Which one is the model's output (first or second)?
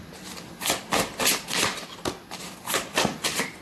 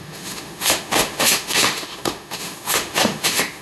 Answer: second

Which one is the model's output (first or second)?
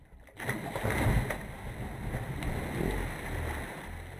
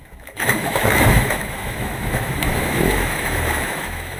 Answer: second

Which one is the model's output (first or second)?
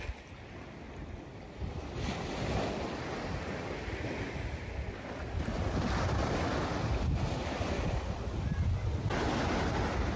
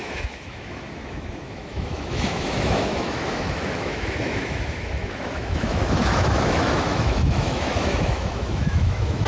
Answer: second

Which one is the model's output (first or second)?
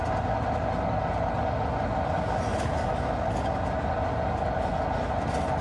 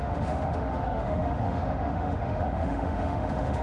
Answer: second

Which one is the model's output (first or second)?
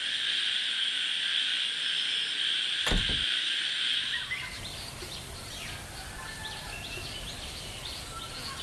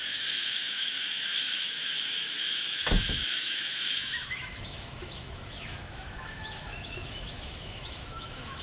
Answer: second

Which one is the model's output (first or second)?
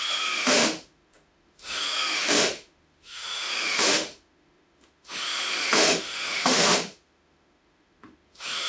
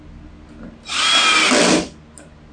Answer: first